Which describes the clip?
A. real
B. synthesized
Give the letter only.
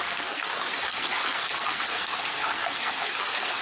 B